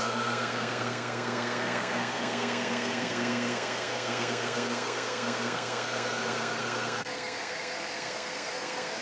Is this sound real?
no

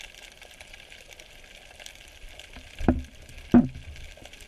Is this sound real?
yes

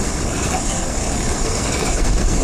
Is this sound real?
no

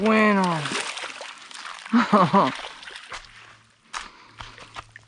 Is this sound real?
yes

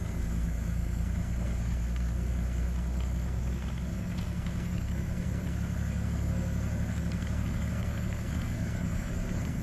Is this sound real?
no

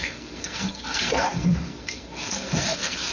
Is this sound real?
no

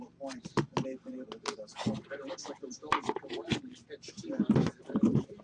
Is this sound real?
yes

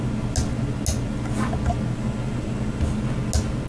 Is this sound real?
yes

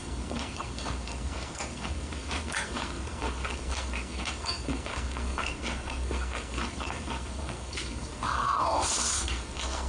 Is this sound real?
no